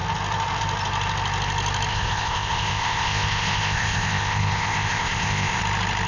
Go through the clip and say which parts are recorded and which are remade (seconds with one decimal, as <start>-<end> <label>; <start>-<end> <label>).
0.0-1.9 recorded; 1.9-5.6 remade; 5.6-6.1 recorded